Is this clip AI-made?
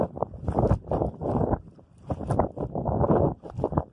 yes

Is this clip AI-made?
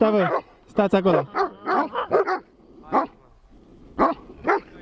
no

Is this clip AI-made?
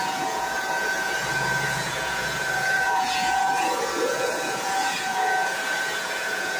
yes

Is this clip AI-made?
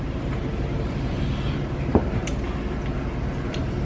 yes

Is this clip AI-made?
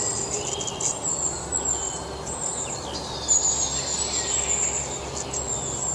no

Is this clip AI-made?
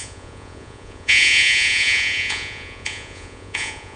yes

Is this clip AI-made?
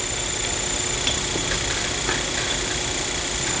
no